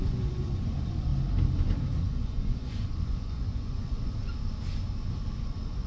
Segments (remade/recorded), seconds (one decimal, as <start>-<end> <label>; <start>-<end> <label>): 0.0-1.1 remade; 1.1-2.0 recorded; 2.0-4.2 remade; 4.2-5.4 recorded; 5.4-5.9 remade